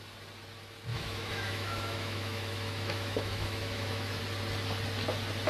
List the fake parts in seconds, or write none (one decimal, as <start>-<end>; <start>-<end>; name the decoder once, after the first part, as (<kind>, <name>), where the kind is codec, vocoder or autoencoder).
0.9-4.2 (autoencoder, DAC-VAE)